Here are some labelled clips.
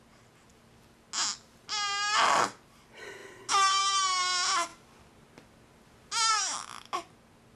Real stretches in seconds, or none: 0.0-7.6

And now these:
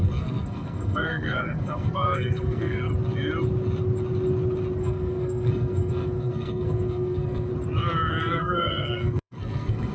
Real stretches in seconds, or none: 2.9-4.8; 7.5-8.1

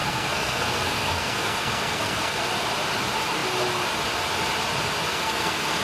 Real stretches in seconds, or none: 2.4-5.1